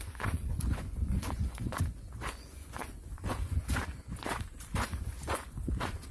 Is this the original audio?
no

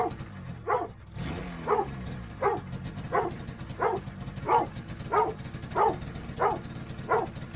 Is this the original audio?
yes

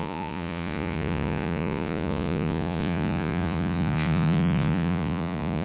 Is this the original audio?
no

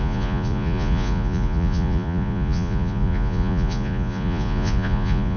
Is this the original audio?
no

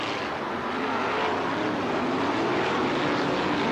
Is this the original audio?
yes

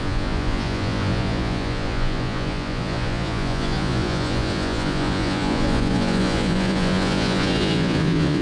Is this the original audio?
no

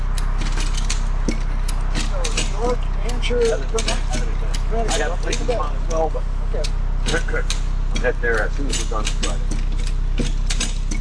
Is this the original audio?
yes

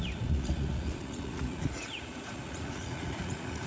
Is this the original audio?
no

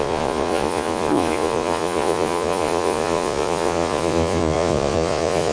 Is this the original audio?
no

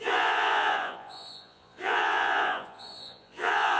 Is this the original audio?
no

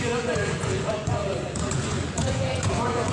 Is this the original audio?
no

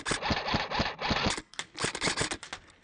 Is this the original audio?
yes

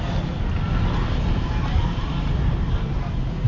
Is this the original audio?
yes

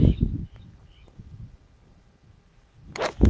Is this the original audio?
yes